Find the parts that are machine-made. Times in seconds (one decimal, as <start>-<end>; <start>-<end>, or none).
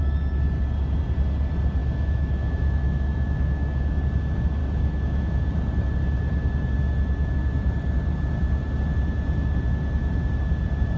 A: 1.8-4.0; 4.6-5.4